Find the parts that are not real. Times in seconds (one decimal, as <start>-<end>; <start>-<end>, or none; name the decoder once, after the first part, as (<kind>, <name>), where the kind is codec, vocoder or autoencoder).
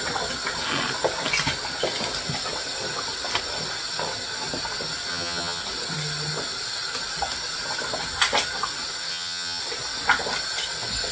5.1-5.6 (vocoder, HiFi-GAN); 9.1-9.6